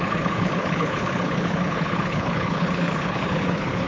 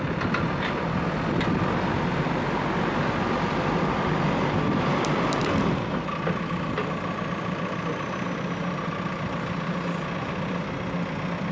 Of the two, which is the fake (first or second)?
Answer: first